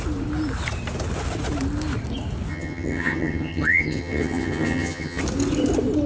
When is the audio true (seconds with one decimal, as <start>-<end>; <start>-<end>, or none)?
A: 0.0-2.5; 5.2-6.1